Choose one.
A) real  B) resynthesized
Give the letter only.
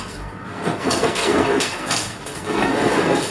B